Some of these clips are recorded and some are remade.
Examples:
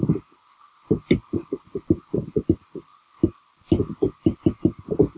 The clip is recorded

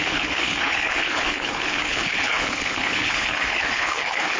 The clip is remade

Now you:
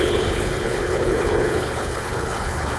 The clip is remade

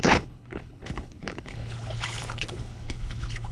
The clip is remade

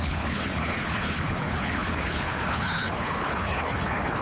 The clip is remade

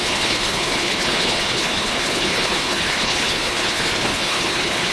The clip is remade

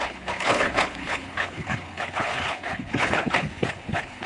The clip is remade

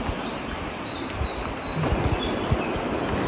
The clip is recorded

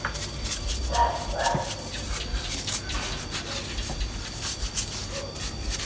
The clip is recorded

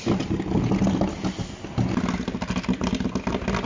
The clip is recorded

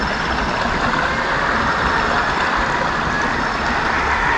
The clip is recorded